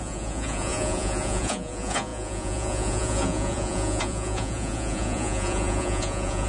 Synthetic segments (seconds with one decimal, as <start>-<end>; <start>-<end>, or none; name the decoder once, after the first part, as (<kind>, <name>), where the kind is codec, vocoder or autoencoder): 0.0-6.5 (vocoder, Vocos)